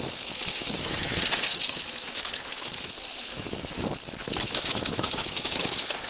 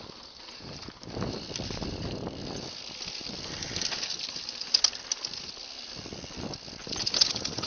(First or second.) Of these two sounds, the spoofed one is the first